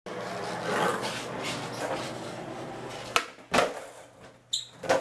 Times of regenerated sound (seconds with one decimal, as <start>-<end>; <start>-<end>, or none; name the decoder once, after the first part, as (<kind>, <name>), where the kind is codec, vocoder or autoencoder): none